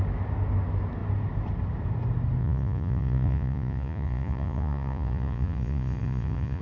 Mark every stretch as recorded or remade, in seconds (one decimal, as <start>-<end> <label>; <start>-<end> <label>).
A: 0.0-2.4 recorded; 2.4-6.6 remade